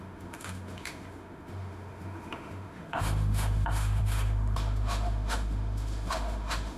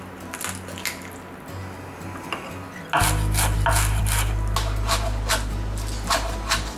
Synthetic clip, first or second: first